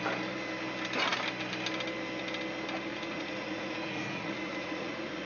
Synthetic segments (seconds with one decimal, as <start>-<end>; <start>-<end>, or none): 2.9-5.3